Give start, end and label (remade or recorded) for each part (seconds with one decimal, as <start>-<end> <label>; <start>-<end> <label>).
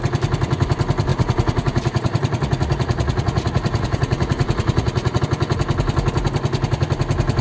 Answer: 0.0-1.1 recorded; 1.1-5.2 remade; 5.2-7.4 recorded